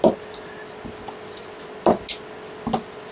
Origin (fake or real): real